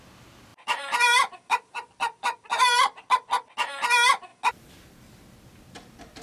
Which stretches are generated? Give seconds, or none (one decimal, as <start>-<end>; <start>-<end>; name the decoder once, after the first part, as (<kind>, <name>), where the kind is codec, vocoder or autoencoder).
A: 0.5-3.5 (vocoder, BigVGAN v2)

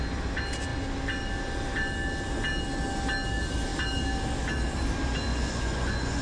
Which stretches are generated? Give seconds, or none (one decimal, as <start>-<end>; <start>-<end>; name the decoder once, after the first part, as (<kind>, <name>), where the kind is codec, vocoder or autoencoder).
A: 5.3-6.2 (vocoder, Vocos)

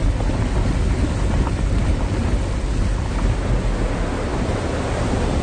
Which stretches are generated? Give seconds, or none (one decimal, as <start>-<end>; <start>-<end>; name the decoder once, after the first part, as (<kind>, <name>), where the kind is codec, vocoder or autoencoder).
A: 0.0-3.1 (vocoder, BigVGAN v2); 4.3-5.4

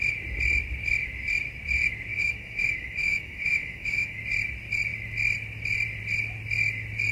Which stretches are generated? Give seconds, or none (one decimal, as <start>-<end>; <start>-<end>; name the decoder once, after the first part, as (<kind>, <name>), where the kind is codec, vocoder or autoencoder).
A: 2.1-4.2 (autoencoder, DAC-VAE)

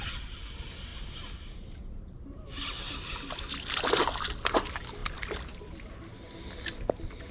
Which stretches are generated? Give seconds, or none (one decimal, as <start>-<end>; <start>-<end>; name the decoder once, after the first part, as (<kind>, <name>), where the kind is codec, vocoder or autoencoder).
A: 0.9-3.4 (vocoder, BigVGAN v2); 5.0-5.9